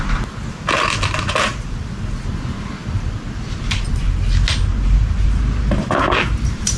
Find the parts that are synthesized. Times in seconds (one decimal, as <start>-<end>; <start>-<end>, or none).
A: none